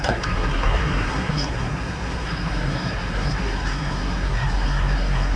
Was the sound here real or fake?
fake